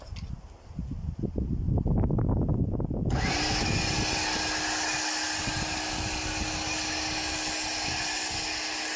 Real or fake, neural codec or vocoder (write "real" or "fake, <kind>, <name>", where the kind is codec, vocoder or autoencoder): real